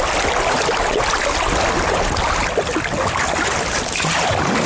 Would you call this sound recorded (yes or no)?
yes